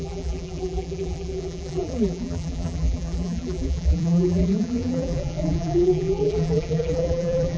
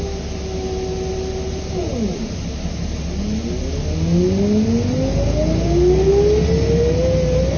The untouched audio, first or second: second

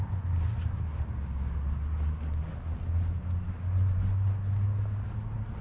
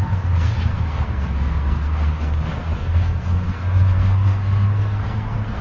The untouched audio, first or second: first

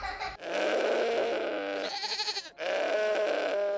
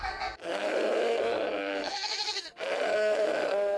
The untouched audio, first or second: first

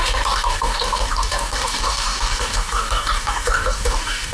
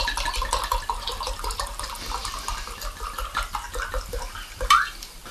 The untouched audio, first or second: second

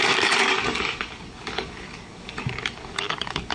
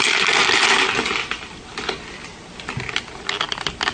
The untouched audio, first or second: second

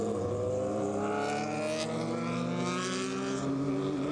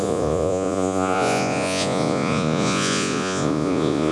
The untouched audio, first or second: first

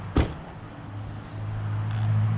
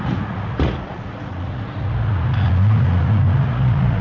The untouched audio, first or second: first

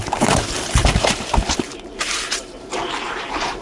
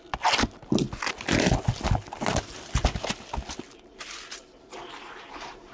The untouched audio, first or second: second